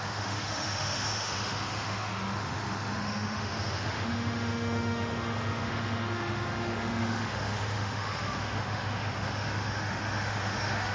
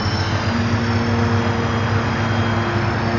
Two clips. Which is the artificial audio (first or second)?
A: first